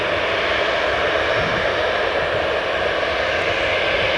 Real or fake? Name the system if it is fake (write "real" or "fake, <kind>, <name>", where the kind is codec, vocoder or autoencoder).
real